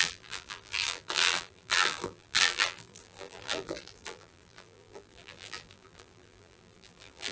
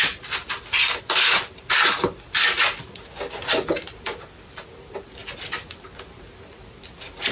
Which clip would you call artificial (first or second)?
first